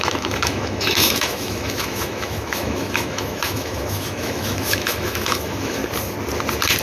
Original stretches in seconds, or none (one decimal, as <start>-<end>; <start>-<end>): 5.8-6.8